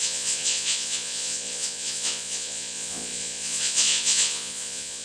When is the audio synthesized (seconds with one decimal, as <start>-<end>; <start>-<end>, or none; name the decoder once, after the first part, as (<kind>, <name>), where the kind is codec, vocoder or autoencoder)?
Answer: 0.0-5.0 (vocoder, Vocos)